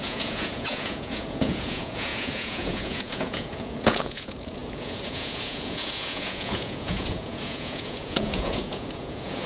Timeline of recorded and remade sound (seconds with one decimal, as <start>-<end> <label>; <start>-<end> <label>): 0.0-9.5 remade